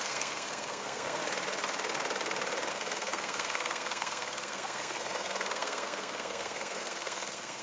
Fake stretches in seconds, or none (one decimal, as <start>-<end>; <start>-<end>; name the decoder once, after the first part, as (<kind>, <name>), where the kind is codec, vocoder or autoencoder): 0.0-1.2 (codec, SNAC); 2.7-7.6